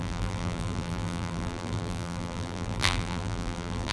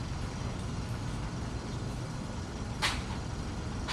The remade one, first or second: first